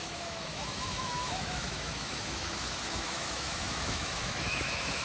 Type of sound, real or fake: fake